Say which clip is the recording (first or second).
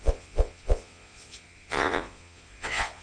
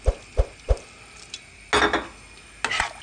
second